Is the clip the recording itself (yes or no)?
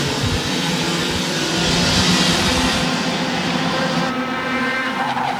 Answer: yes